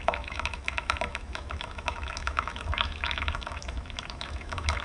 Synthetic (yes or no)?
yes